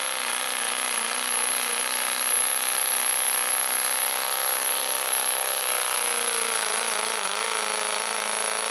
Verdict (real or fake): real